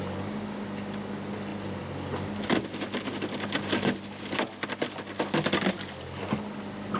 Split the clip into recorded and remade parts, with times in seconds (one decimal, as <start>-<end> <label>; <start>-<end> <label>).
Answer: 0.0-7.0 recorded